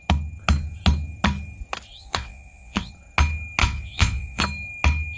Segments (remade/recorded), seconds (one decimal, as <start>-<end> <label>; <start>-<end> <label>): 0.0-2.0 recorded; 2.0-2.9 remade; 2.9-3.6 recorded; 3.6-4.4 remade; 4.4-5.2 recorded